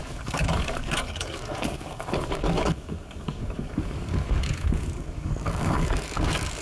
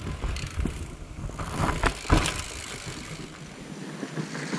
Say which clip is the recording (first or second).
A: second